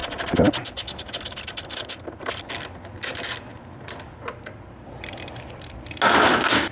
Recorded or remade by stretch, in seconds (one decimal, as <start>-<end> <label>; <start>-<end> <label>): 0.0-2.4 remade; 2.4-6.7 recorded